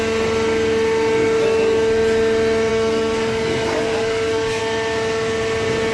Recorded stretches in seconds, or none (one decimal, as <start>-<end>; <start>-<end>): 0.0-2.7; 4.6-5.9